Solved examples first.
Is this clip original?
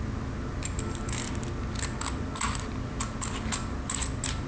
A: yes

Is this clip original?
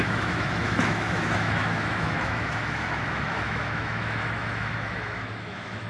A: no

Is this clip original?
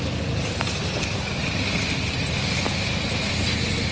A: yes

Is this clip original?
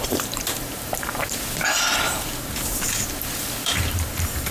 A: no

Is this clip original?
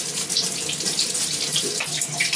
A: yes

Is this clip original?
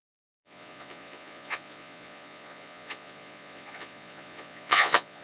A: no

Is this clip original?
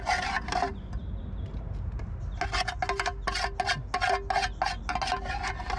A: yes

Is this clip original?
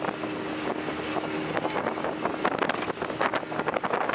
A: yes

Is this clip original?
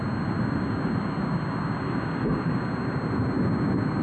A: yes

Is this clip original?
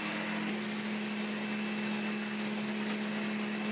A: yes